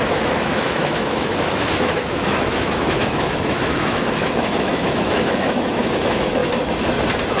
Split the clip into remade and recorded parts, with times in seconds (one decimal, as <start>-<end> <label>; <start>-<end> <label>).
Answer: 0.0-6.4 remade; 6.4-7.4 recorded